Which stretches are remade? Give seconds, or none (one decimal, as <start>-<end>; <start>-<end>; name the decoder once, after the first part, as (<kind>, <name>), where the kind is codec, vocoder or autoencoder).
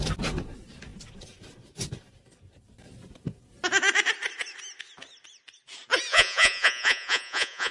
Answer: 6.1-7.7 (vocoder, Vocos)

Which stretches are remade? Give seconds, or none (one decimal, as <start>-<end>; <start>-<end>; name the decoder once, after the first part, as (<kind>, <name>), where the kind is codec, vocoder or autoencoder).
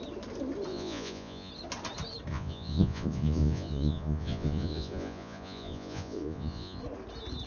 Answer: 0.7-1.5 (vocoder, Vocos); 2.3-6.8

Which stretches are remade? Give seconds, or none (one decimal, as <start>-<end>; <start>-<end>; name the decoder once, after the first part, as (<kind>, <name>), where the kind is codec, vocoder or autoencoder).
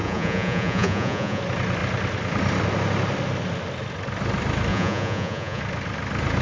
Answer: 0.0-1.4 (vocoder, Vocos); 4.7-5.6